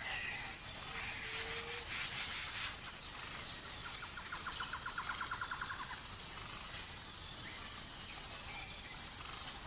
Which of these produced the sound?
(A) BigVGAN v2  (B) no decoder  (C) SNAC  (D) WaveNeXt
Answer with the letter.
B